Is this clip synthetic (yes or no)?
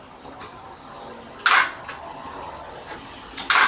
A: no